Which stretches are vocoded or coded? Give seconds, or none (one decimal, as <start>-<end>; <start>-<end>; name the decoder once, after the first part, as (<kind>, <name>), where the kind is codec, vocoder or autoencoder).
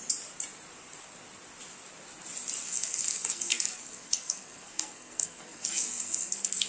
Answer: 2.6-6.7 (codec, SNAC)